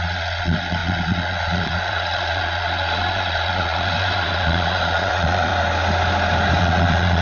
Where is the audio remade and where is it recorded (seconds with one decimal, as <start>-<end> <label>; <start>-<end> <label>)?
0.0-5.5 remade; 5.5-6.6 recorded; 6.6-7.2 remade